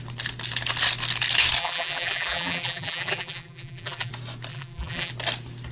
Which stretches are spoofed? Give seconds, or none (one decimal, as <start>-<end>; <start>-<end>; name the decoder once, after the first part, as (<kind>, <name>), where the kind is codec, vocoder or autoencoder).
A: 1.6-4.1 (vocoder, BigVGAN v2); 4.5-5.1